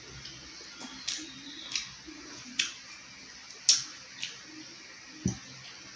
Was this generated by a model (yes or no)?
no